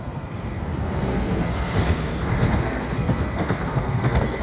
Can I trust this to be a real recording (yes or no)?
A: no